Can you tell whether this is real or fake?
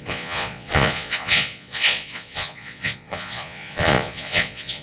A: fake